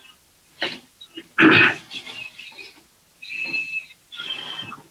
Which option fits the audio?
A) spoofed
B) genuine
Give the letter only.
B